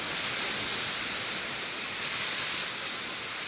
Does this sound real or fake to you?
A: real